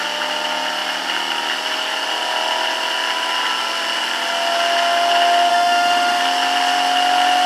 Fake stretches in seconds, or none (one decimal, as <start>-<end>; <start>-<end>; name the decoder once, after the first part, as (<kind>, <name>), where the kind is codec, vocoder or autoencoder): 5.5-6.2 (autoencoder, DAC-VAE)